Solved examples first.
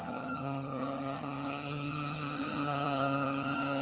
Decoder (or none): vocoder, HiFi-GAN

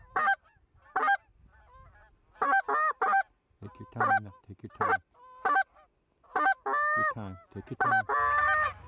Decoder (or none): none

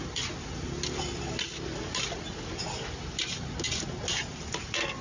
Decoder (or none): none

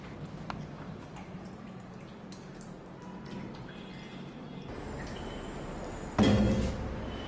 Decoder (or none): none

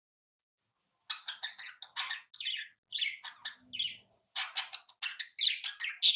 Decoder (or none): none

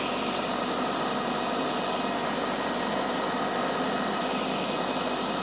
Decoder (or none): none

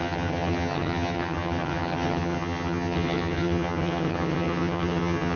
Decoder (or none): vocoder, HiFi-GAN